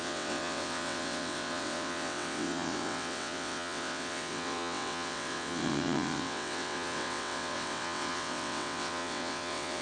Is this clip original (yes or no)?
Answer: no